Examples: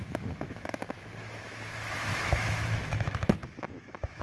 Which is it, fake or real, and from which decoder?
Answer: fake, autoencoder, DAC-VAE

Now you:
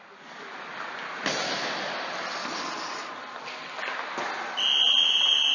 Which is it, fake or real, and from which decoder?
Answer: real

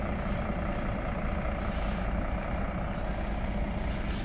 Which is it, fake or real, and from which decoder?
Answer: real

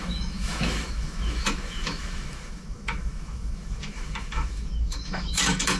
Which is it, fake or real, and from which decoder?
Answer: fake, autoencoder, DAC-VAE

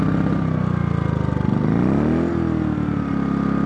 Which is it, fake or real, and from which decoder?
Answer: real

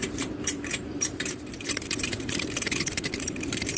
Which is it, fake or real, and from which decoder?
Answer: fake, vocoder, BigVGAN v2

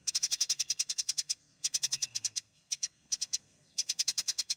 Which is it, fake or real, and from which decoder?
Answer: fake, codec, SNAC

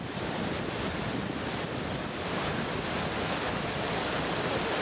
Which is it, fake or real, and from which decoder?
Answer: real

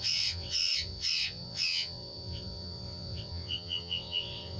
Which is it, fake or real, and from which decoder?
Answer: fake, vocoder, WaveNeXt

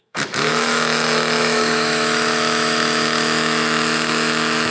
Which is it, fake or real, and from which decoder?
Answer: fake, autoencoder, DAC-VAE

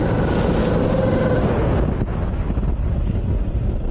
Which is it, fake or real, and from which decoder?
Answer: real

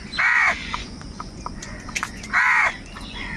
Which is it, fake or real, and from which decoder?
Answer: fake, vocoder, Vocos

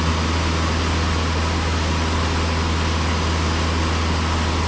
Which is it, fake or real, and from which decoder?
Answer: real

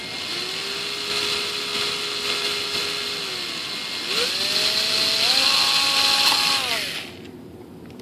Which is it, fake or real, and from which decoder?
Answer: real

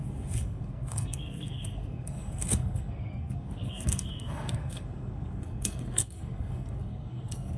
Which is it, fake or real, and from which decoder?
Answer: fake, codec, SNAC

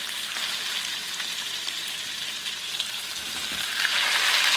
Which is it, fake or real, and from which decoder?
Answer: fake, vocoder, BigVGAN v2